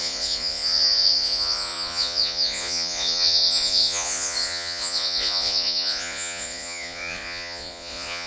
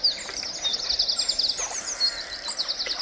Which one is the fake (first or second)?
first